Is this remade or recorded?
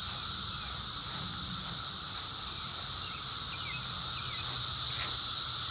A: recorded